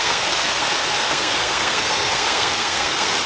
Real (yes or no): no